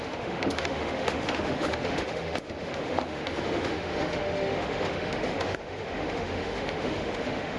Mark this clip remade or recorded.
remade